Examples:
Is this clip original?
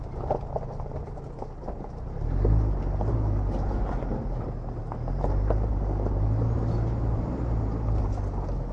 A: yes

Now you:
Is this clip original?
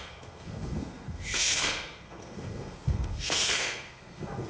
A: no